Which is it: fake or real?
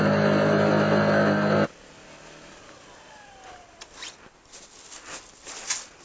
real